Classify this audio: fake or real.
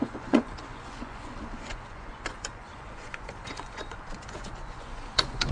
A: fake